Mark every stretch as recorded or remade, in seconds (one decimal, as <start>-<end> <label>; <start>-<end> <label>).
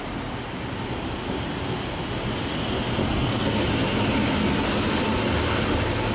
0.0-3.0 recorded; 3.0-3.7 remade; 3.7-6.1 recorded